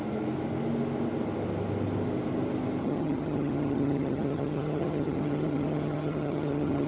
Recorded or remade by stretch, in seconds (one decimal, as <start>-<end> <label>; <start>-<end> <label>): 0.0-2.8 recorded; 2.8-6.9 remade